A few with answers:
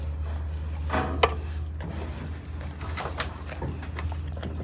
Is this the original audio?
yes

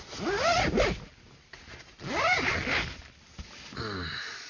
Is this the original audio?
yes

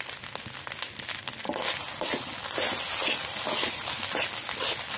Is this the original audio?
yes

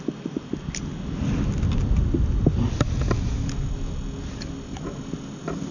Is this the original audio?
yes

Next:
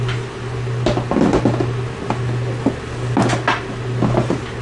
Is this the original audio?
yes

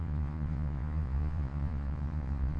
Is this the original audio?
no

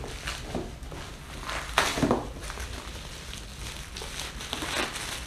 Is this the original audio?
yes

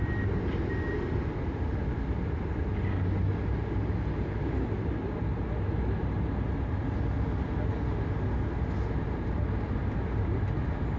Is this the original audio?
yes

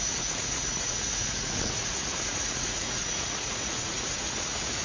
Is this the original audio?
no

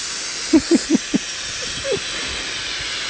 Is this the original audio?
yes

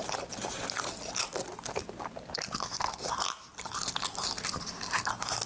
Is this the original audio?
yes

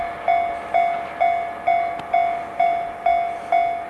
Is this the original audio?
yes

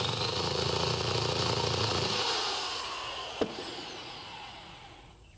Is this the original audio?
no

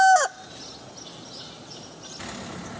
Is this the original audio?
yes